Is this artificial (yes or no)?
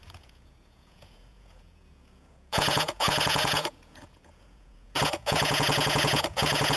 yes